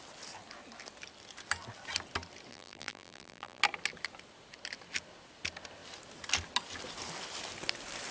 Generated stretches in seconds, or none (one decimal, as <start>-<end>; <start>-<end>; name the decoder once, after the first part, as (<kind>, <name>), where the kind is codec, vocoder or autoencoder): 2.5-3.6 (vocoder, BigVGAN v2)